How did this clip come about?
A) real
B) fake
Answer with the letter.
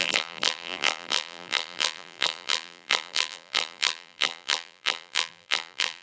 B